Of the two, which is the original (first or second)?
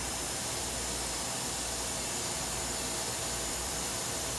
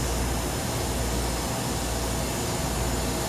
second